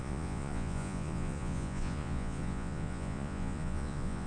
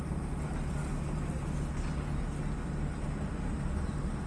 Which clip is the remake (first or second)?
first